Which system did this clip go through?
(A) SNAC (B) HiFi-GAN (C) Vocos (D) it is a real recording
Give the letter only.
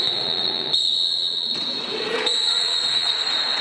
C